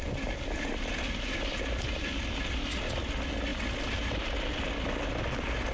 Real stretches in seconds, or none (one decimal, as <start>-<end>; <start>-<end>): 0.0-5.7